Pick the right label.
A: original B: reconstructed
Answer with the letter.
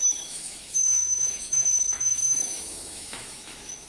B